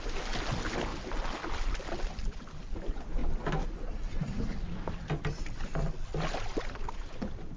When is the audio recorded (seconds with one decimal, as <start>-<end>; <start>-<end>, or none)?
0.0-7.6